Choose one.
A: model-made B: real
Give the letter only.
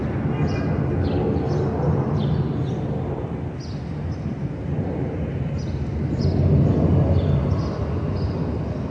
B